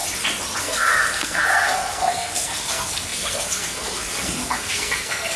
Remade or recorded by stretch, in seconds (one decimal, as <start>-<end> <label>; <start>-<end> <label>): 0.0-0.6 recorded; 0.6-5.4 remade

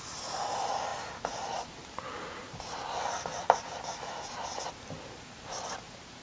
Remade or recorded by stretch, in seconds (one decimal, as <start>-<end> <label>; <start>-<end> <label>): 0.0-6.2 recorded

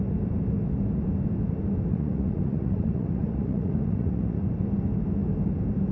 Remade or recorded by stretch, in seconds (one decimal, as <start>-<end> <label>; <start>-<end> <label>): 0.0-1.9 recorded; 1.9-4.4 remade; 4.4-5.9 recorded

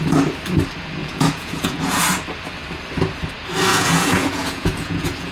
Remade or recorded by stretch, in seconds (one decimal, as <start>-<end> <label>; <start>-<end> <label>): 0.0-1.0 recorded; 1.0-2.0 remade; 2.0-3.7 recorded; 3.7-5.3 remade

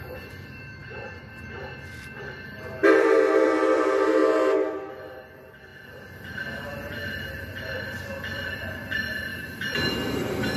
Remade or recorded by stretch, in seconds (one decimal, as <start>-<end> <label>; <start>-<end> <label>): 0.0-4.2 remade; 4.2-4.9 recorded; 4.9-5.7 remade; 5.7-7.3 recorded; 7.3-10.6 remade

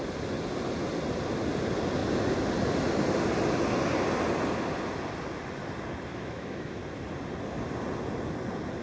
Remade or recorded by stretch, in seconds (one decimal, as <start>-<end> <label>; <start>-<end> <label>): 0.0-6.1 recorded; 6.1-6.8 remade; 6.8-8.8 recorded

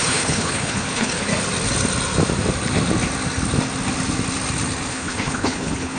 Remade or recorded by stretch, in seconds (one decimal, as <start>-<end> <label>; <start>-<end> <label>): 0.0-1.3 remade; 1.3-4.9 recorded; 4.9-6.0 remade

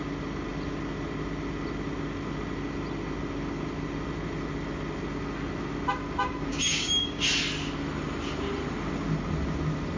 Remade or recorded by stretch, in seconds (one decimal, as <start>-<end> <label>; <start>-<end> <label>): 0.0-6.5 recorded; 6.5-7.2 remade; 7.2-10.0 recorded